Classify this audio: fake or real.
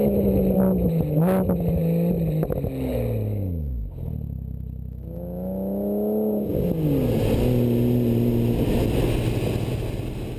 real